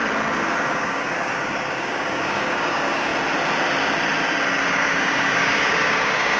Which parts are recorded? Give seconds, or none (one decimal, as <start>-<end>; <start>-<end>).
0.0-0.6; 3.1-4.6